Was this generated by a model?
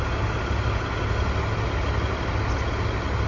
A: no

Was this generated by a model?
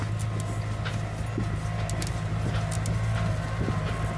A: no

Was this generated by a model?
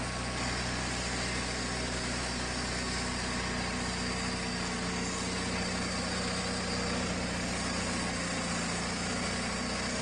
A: no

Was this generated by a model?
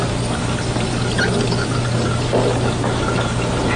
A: no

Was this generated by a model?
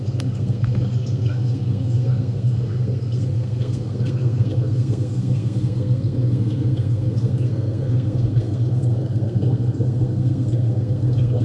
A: yes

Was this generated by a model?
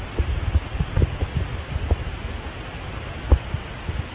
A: no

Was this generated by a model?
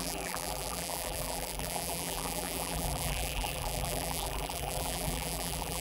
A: yes